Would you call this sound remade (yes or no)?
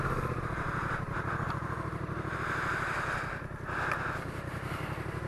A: no